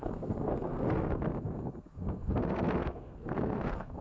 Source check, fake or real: fake